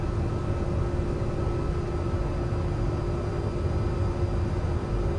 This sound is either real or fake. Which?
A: real